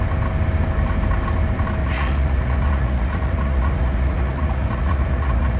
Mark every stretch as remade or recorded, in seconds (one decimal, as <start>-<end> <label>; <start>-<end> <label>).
0.0-1.8 recorded; 1.8-5.6 remade